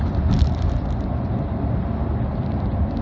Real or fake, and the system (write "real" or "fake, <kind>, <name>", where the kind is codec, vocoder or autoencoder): real